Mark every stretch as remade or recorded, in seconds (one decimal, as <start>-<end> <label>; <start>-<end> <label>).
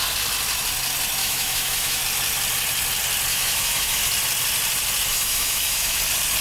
0.0-1.2 recorded; 1.2-2.0 remade; 2.0-3.3 recorded; 3.3-4.0 remade; 4.0-5.1 recorded; 5.1-6.0 remade; 6.0-6.4 recorded